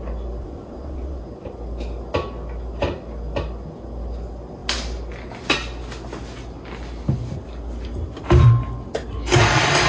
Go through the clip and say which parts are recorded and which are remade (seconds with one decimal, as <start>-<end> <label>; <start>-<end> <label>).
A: 0.0-0.4 recorded; 0.4-1.2 remade; 1.2-9.9 recorded

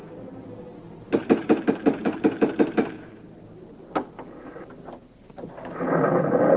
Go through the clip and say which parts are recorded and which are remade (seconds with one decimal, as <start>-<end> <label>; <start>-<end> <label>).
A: 0.0-6.6 recorded

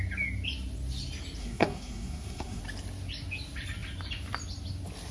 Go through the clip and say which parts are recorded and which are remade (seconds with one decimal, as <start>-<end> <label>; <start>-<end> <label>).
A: 0.0-1.4 recorded; 1.4-2.6 remade; 2.6-5.1 recorded

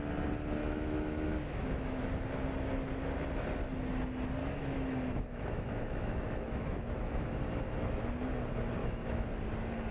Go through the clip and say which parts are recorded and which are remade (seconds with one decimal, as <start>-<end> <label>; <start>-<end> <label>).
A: 0.0-0.6 recorded; 0.6-2.0 remade; 2.0-4.4 recorded; 4.4-7.4 remade; 7.4-8.8 recorded; 8.8-9.3 remade; 9.3-9.9 recorded